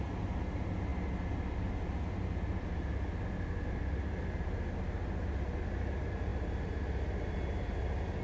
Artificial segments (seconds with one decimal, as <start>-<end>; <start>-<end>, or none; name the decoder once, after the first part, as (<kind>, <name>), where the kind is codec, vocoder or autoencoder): none

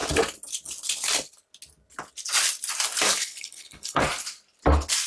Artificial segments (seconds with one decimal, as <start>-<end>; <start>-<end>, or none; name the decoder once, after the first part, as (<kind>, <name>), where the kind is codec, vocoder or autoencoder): 3.1-4.0 (codec, HILCodec)